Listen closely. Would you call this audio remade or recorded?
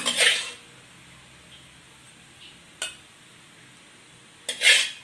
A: recorded